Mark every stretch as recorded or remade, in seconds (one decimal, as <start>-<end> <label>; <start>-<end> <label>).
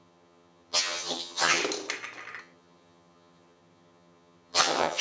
0.0-1.6 remade; 1.6-2.4 recorded; 2.4-5.0 remade